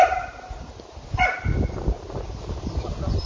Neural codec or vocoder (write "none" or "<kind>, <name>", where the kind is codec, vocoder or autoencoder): none